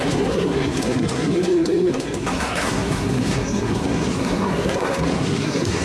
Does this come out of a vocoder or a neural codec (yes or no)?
yes